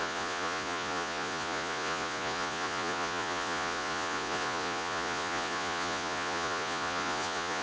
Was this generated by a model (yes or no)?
yes